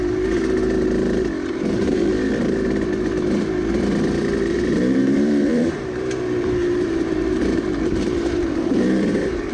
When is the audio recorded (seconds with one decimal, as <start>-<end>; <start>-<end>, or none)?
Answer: 0.0-1.5; 2.3-4.5